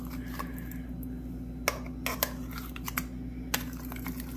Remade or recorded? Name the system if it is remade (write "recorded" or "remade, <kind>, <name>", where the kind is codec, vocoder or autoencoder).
recorded